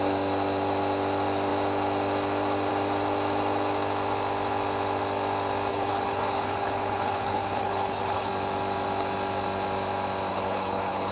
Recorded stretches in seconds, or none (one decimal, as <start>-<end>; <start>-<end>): 0.0-5.7; 8.3-10.3